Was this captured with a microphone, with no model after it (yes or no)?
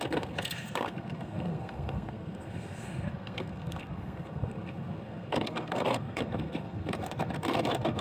no